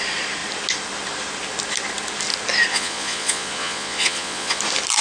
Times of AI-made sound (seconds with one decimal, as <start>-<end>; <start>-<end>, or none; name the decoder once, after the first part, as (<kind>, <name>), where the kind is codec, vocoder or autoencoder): 2.7-4.6 (vocoder, Vocos)